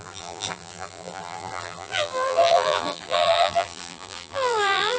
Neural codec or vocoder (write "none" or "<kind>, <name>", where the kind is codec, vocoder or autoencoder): vocoder, BigVGAN v2